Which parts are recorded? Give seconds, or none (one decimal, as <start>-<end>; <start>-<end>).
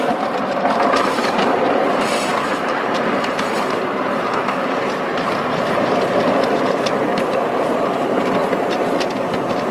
0.0-2.3; 6.0-9.7